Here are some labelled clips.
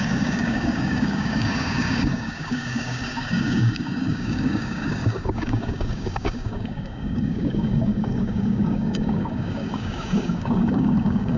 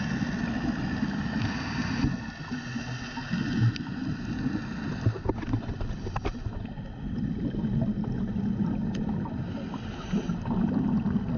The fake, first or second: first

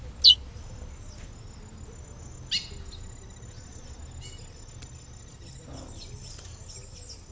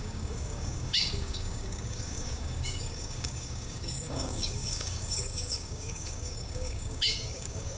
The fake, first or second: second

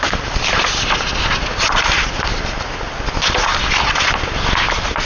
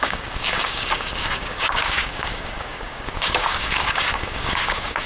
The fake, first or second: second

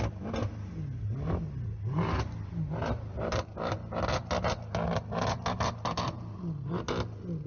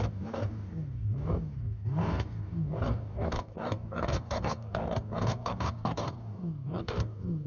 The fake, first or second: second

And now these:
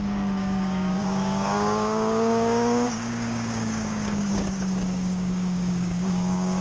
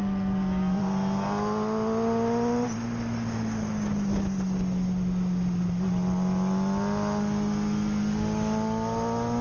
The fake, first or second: first